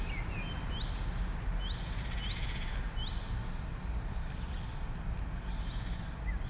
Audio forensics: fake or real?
real